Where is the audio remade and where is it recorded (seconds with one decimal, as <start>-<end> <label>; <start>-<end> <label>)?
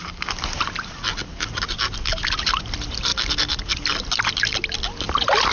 0.0-5.5 recorded